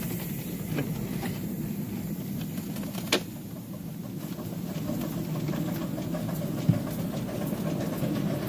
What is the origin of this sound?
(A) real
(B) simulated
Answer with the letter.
A